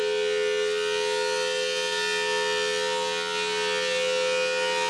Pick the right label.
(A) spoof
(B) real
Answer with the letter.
B